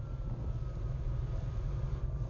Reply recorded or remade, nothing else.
recorded